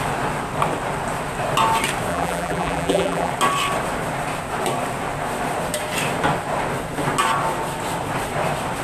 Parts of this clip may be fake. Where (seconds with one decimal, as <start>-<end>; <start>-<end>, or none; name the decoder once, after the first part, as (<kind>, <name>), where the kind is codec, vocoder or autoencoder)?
2.1-3.3 (vocoder, BigVGAN v2)